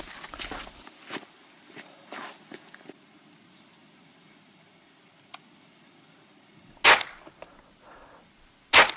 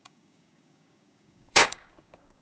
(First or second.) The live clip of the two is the first